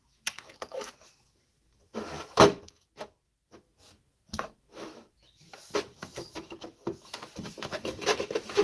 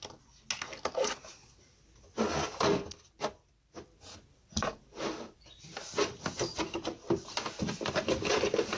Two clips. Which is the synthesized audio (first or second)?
first